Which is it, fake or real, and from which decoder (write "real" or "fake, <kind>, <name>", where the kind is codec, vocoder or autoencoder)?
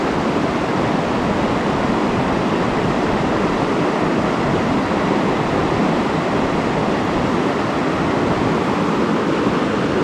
real